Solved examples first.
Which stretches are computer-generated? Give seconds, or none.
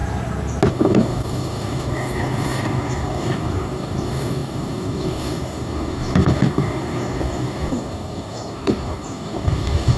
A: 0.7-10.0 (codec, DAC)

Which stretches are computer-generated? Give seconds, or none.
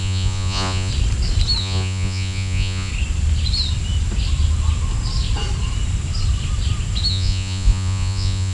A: 0.0-0.9 (vocoder, Vocos); 1.6-2.9; 7.1-8.5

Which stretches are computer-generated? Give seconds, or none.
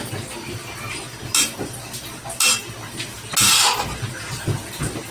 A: none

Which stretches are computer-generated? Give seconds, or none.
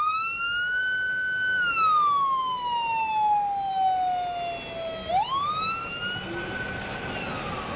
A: none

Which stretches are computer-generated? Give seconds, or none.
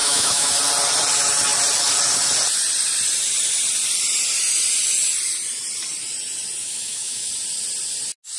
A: 0.0-0.5 (autoencoder, DAC-VAE); 6.6-7.3